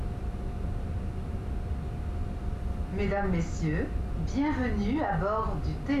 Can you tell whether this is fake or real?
real